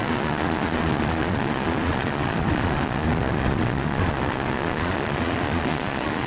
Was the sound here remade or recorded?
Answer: remade